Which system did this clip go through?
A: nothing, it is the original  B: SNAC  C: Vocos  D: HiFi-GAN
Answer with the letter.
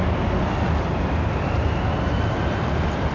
A